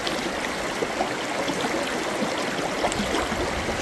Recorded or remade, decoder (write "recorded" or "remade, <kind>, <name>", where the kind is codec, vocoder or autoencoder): recorded